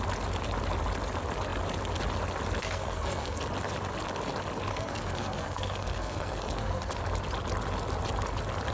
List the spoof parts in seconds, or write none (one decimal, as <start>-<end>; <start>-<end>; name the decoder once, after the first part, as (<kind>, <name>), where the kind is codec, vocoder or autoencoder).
2.6-3.4 (codec, SNAC); 4.7-6.9